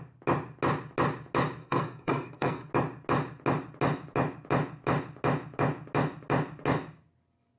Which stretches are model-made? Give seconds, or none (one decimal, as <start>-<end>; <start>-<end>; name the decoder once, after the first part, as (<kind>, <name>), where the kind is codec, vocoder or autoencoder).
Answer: 1.6-2.7 (codec, SNAC)